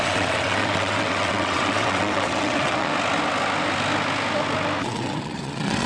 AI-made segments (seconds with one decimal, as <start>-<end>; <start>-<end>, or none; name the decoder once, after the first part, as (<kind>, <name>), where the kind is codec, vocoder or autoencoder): 0.0-2.9 (vocoder, WaveNeXt); 4.8-5.9